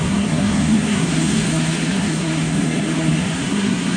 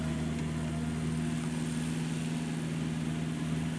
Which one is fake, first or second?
first